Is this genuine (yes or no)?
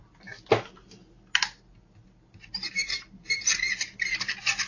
yes